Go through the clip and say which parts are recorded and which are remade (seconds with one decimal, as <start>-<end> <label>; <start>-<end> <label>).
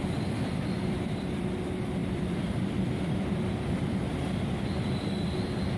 0.0-5.8 remade